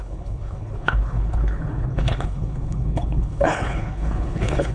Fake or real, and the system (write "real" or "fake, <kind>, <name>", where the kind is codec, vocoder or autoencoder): fake, codec, HILCodec